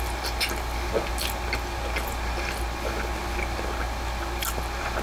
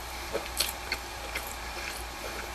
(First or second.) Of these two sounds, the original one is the first